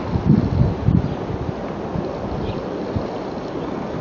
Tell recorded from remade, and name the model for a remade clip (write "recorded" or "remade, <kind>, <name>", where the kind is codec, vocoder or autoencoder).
recorded